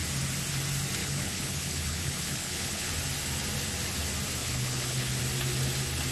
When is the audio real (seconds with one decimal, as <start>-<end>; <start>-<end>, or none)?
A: 0.0-1.0; 2.9-4.4; 5.2-6.1

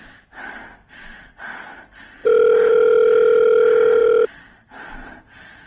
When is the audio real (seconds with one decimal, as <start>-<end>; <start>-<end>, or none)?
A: 0.0-5.7